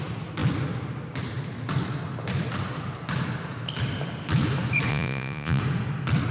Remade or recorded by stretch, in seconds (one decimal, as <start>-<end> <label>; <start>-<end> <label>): 0.0-4.9 recorded; 4.9-5.6 remade; 5.6-6.3 recorded